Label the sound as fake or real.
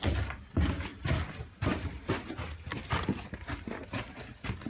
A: real